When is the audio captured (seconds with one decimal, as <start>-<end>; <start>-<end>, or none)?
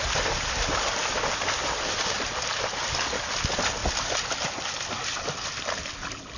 0.0-6.4